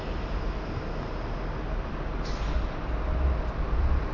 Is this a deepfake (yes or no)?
no